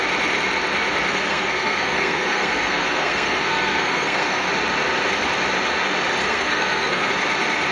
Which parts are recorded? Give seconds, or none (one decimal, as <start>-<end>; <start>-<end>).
0.0-1.1; 4.5-6.2; 7.1-7.7